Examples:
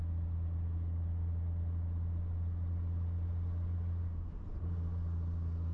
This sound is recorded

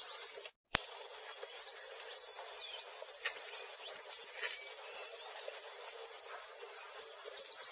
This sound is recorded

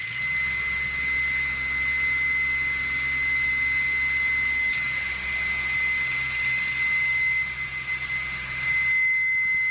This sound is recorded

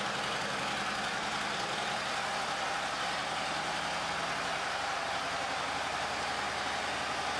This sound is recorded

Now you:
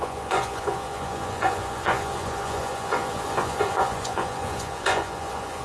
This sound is remade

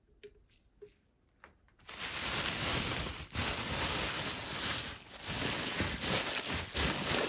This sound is recorded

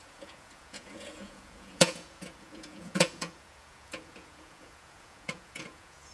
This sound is remade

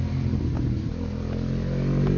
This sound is recorded